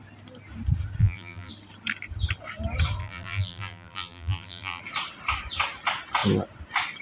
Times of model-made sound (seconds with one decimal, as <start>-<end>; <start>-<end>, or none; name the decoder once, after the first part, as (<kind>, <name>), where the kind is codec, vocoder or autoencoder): 1.0-1.5 (vocoder, BigVGAN v2); 3.0-4.8